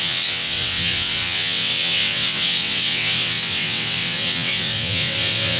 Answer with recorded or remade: remade